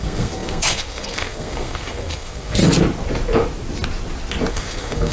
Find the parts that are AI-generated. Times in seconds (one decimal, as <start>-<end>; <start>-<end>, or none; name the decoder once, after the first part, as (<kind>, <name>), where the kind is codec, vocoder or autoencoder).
0.0-2.6 (codec, SNAC); 4.5-5.1